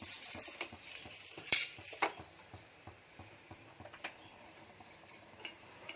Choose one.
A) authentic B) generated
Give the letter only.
B